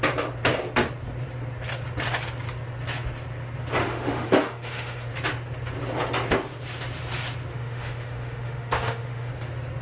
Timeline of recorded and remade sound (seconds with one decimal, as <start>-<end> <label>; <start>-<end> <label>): 0.0-3.8 recorded; 3.8-5.1 remade; 5.1-7.5 recorded; 7.5-9.3 remade; 9.3-9.8 recorded